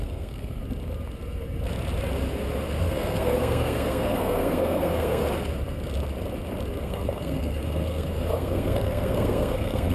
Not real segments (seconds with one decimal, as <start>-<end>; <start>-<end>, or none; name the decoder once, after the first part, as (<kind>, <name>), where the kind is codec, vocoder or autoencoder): 0.0-0.6 (codec, SNAC); 2.8-5.2; 6.8-9.9